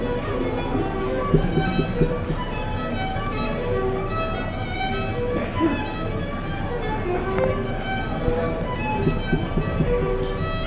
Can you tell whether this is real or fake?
real